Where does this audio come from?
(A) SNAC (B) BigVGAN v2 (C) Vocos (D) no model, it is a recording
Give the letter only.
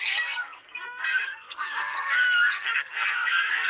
A